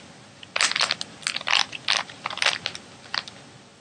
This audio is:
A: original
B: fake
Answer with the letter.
A